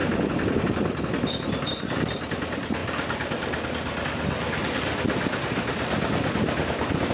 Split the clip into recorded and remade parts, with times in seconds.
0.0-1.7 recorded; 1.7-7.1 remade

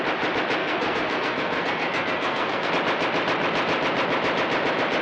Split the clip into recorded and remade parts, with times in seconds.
0.0-0.6 recorded; 0.6-2.7 remade; 2.7-5.0 recorded

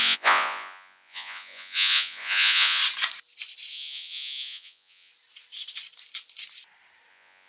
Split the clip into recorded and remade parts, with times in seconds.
0.0-2.8 remade; 2.8-3.7 recorded; 3.7-5.1 remade; 5.1-7.1 recorded; 7.1-7.5 remade

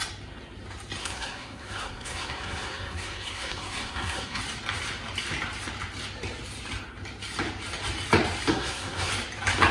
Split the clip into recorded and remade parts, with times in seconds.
0.0-1.0 recorded; 1.0-4.4 remade; 4.4-8.5 recorded; 8.5-9.1 remade; 9.1-9.7 recorded

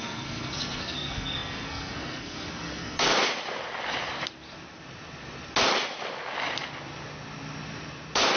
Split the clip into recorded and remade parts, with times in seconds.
0.0-3.1 remade; 3.1-8.4 recorded

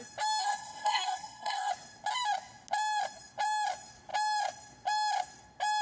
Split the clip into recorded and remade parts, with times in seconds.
0.0-0.4 recorded; 0.4-1.7 remade; 1.7-5.8 recorded

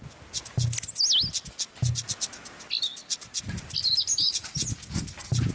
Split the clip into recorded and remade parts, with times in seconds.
0.0-5.5 recorded